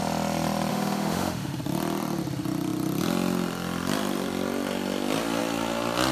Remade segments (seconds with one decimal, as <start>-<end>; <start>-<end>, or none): 0.7-1.6